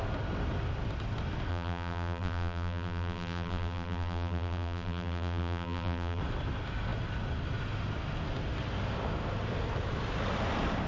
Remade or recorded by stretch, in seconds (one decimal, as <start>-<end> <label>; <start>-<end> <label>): 0.0-1.5 recorded; 1.5-6.2 remade; 6.2-10.9 recorded